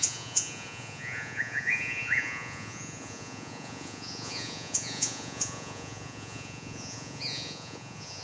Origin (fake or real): fake